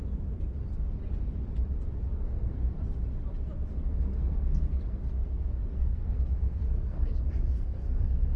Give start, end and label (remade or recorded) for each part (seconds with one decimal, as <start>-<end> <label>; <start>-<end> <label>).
0.0-2.1 recorded; 2.1-2.6 remade; 2.6-3.7 recorded; 3.7-8.4 remade

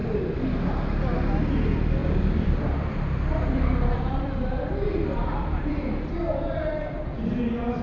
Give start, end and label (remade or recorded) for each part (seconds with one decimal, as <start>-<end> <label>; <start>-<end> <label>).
0.0-2.0 recorded; 2.0-5.7 remade; 5.7-7.8 recorded

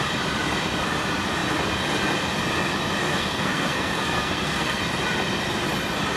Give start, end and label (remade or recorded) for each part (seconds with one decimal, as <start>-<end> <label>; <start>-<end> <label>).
0.0-3.1 recorded; 3.1-4.8 remade; 4.8-6.2 recorded

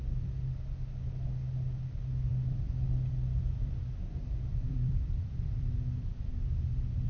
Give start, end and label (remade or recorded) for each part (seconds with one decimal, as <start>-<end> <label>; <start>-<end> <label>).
0.0-4.5 recorded; 4.5-6.3 remade; 6.3-7.1 recorded